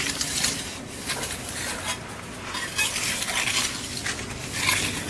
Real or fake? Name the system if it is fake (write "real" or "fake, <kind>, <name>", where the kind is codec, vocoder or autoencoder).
real